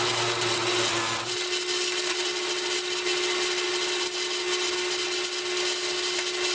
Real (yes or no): yes